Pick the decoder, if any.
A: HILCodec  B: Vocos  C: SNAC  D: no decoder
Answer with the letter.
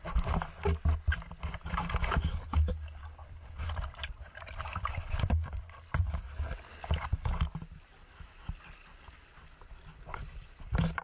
D